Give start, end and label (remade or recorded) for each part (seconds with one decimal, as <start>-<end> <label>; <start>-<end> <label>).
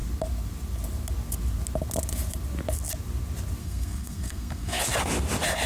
0.0-3.6 recorded; 3.6-4.8 remade; 4.8-5.7 recorded